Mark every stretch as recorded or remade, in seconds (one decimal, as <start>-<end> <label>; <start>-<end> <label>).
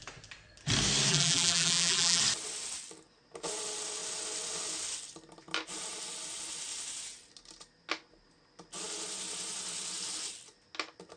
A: 0.0-1.1 recorded; 1.1-2.2 remade; 2.2-11.2 recorded